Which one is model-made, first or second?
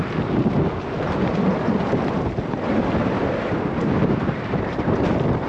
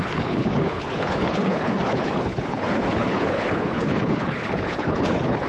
second